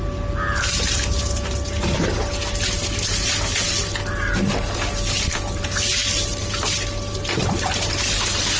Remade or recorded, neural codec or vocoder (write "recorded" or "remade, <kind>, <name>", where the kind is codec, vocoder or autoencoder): recorded